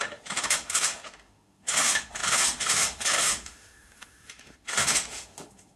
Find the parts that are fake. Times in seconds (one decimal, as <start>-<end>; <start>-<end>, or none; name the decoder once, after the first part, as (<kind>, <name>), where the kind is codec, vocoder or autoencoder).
0.0-5.8 (autoencoder, DAC-VAE)